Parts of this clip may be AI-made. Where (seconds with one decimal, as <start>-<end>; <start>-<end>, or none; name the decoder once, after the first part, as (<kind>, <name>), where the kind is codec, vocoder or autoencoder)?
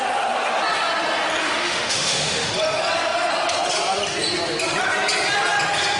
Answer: 1.4-2.5 (autoencoder, DAC-VAE)